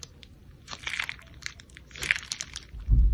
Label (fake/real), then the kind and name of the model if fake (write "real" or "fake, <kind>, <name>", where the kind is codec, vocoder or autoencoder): fake, vocoder, BigVGAN v2